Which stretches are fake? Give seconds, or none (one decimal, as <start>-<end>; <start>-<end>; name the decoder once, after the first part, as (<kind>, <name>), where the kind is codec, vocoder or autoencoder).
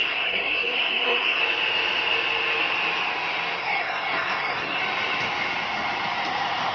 0.0-1.4 (codec, SNAC); 3.6-4.8